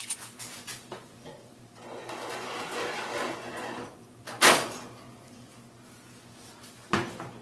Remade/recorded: remade